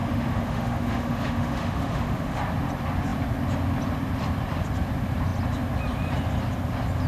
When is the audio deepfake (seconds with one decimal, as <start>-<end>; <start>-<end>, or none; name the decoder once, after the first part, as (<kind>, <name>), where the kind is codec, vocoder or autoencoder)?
0.0-2.4 (autoencoder, DAC-VAE)